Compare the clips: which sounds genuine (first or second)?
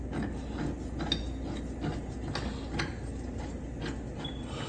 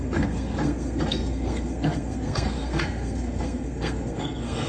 first